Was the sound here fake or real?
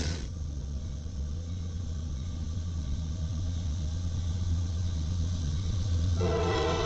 fake